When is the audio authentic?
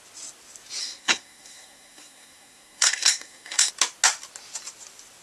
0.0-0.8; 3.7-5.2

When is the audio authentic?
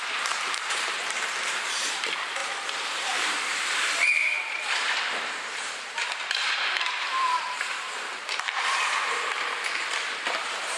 none